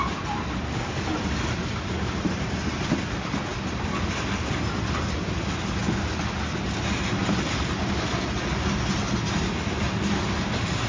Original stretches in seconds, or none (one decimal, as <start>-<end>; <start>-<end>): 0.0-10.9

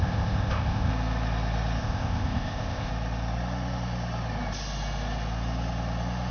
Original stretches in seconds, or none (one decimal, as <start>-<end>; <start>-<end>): 0.9-1.8; 2.9-6.3

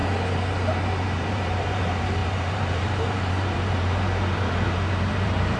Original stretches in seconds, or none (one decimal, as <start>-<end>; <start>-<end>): 0.0-0.7

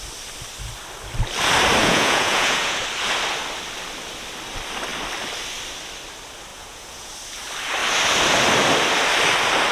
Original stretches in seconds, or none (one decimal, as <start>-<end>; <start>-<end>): 0.0-1.8; 2.8-6.5; 7.1-9.7

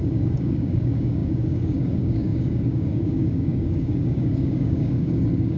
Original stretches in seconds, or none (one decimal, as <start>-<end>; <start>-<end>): none

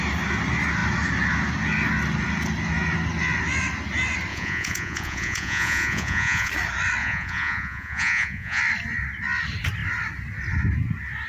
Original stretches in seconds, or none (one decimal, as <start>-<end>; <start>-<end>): 0.0-4.3; 6.5-7.0; 8.6-11.3

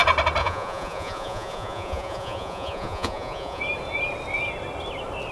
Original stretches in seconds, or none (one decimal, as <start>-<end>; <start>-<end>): 0.0-0.4; 3.6-5.3